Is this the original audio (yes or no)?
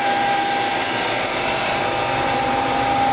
yes